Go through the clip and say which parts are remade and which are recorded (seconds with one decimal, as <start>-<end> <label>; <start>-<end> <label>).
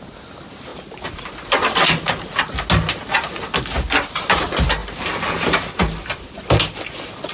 0.0-7.3 recorded